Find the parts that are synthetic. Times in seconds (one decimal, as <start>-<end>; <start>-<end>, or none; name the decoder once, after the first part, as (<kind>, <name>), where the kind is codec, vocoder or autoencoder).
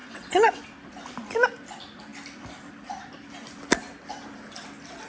0.0-0.6 (vocoder, WaveNeXt)